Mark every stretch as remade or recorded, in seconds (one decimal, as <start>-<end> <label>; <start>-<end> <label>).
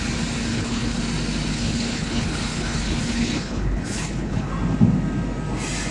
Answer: 0.0-0.5 recorded; 0.5-1.0 remade; 1.0-1.5 recorded; 1.5-4.5 remade; 4.5-5.9 recorded